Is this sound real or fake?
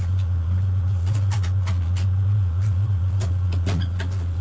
fake